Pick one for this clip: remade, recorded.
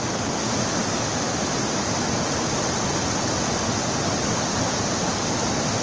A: recorded